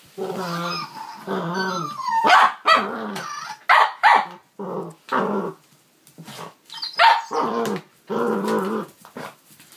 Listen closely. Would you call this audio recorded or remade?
recorded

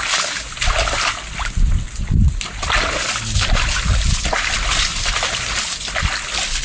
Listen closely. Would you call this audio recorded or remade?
recorded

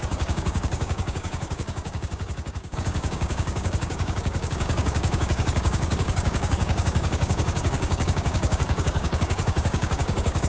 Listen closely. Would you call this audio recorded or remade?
remade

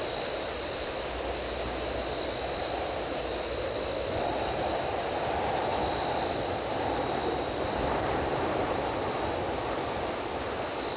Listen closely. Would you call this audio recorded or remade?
recorded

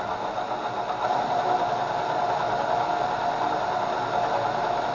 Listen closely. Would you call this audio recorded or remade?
recorded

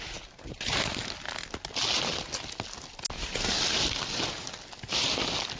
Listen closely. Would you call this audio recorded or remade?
recorded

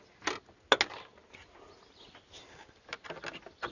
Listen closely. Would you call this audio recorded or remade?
recorded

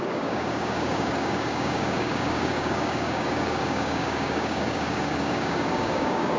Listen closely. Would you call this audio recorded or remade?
remade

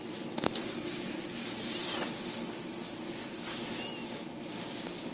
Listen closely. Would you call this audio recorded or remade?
recorded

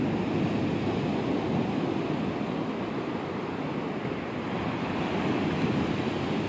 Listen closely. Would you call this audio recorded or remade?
recorded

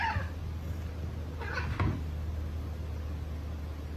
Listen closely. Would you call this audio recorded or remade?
recorded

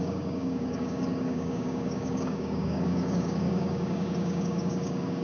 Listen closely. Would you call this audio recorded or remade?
remade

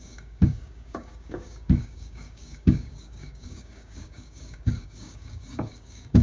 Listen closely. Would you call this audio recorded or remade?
remade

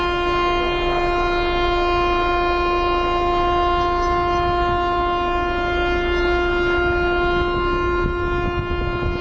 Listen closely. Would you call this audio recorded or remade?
recorded